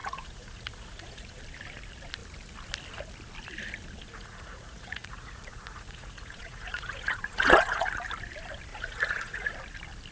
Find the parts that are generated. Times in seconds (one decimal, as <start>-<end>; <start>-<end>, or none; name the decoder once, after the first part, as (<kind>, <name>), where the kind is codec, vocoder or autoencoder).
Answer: 0.0-1.4 (vocoder, Vocos); 4.1-7.9; 8.7-9.5